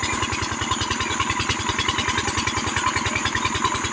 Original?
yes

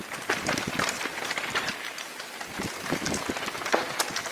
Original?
yes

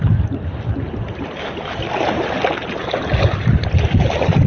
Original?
yes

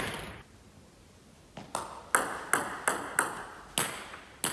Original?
yes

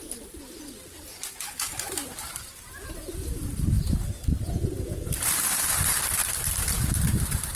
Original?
yes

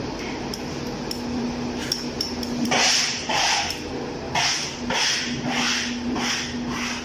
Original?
no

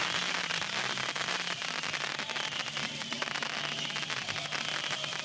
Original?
yes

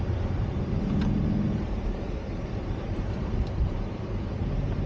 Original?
no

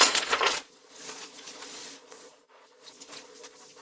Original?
no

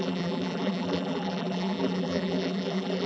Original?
no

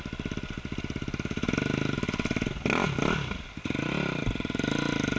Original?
yes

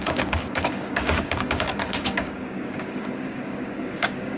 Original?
no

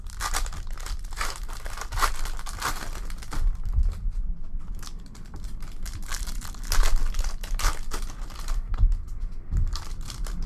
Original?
no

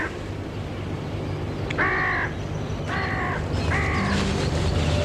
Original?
yes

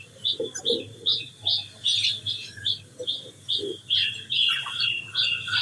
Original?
no